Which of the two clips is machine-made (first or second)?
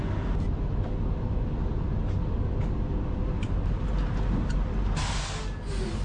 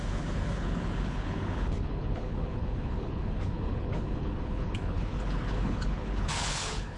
second